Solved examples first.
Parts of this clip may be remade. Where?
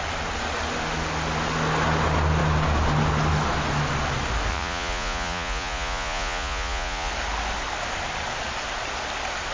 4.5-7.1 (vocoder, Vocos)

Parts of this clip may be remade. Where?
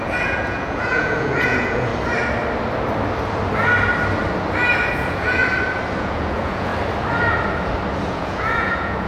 0.0-1.9 (vocoder, Vocos); 4.9-5.4; 6.0-6.7; 8.1-9.1